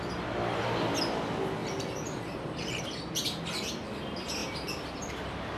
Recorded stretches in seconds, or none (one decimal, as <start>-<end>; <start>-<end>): 0.0-1.6; 2.8-4.4; 5.1-5.6

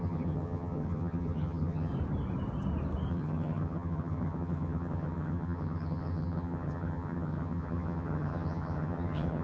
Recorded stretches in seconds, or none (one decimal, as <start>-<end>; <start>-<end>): 1.9-3.1

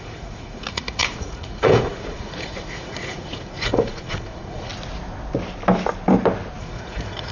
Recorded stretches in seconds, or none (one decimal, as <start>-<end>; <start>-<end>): 4.7-6.6

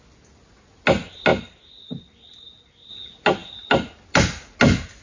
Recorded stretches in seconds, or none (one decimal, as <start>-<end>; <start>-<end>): 0.0-5.0

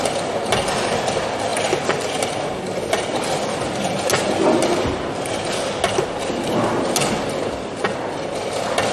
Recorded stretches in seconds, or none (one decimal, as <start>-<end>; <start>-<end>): 0.0-8.9

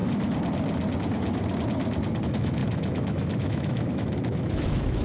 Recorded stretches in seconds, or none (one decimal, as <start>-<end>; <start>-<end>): 0.0-2.2

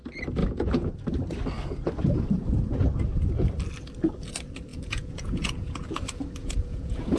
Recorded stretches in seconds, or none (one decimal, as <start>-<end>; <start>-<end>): 0.0-0.4; 0.9-4.7; 6.0-6.4

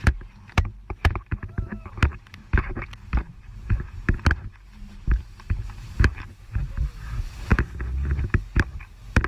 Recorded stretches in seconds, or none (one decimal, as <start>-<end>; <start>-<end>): 1.9-2.4; 6.6-9.3